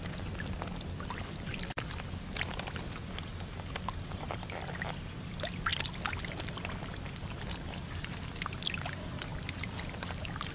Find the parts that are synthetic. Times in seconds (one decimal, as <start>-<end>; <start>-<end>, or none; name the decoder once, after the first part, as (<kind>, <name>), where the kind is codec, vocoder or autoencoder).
9.3-10.5 (vocoder, BigVGAN v2)